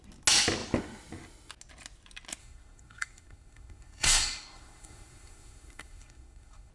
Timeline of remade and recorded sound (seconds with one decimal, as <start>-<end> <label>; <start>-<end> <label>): 0.0-2.4 recorded; 2.4-6.7 remade